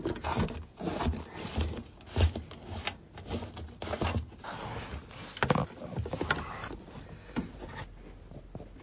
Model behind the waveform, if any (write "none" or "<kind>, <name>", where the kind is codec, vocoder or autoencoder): none